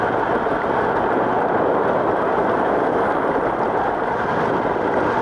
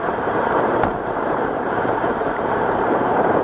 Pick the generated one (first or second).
second